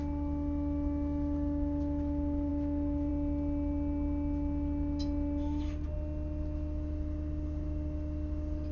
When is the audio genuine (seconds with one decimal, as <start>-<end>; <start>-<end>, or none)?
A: 0.0-8.7